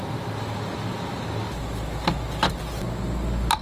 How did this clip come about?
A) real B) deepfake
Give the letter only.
A